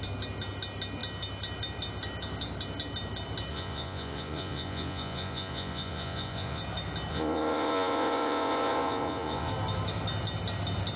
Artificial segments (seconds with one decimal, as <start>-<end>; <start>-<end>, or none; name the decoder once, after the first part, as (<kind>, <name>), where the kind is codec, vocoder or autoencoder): 3.5-6.6 (vocoder, Vocos); 7.1-9.5